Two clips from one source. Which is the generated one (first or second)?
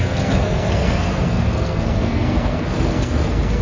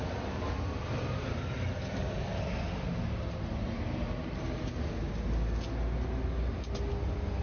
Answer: first